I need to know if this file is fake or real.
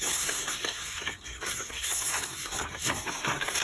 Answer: fake